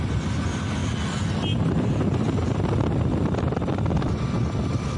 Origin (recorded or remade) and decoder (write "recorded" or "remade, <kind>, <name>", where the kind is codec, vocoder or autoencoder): recorded